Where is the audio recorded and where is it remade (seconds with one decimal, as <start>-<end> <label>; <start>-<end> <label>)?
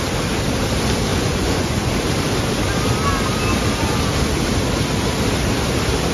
0.0-1.1 recorded; 1.1-1.9 remade; 1.9-6.1 recorded